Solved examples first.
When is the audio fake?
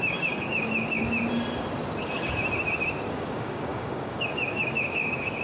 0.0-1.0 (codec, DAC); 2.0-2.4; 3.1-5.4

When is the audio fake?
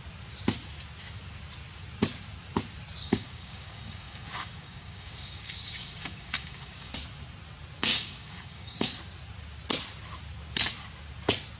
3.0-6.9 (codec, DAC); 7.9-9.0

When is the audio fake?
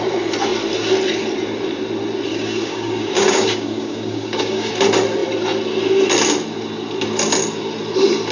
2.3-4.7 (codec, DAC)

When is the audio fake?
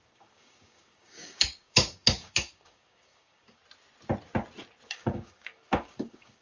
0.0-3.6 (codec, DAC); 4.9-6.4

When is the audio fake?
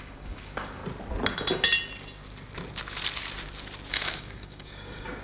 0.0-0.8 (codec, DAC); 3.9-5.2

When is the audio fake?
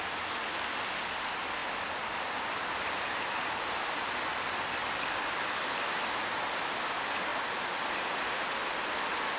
none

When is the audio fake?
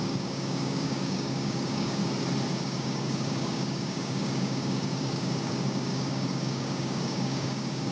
0.0-2.0 (codec, DAC); 2.5-7.9